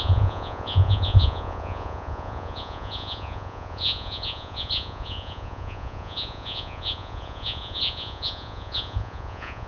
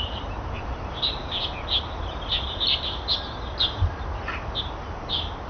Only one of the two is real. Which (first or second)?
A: second